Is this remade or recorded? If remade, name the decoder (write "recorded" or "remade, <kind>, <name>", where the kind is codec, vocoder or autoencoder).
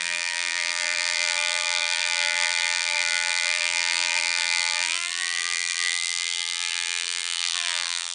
remade, vocoder, BigVGAN v2